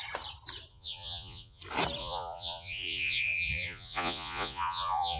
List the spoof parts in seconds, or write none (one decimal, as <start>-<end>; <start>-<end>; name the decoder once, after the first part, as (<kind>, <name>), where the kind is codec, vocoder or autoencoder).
0.7-1.6 (vocoder, Vocos); 2.0-5.2